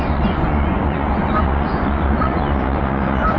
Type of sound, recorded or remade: remade